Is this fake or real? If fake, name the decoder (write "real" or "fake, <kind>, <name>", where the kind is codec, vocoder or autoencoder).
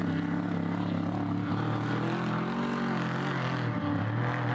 real